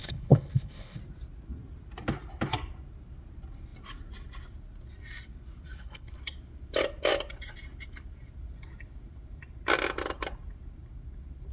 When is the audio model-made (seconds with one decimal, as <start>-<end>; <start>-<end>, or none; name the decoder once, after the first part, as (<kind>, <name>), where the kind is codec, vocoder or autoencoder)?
0.0-1.0 (codec, HILCodec); 5.7-6.2